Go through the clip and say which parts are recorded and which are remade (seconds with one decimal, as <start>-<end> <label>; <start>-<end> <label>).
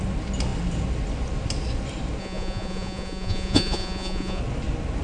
0.0-2.2 recorded; 2.2-4.4 remade; 4.4-5.0 recorded